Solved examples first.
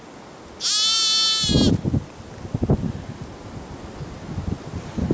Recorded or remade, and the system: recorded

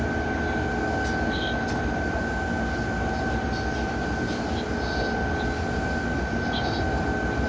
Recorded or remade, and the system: recorded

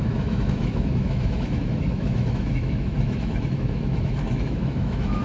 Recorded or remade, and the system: remade, autoencoder, DAC-VAE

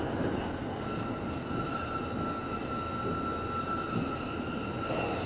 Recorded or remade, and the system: recorded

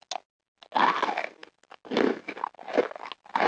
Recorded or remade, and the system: recorded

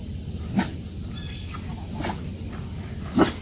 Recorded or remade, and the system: remade, vocoder, BigVGAN v2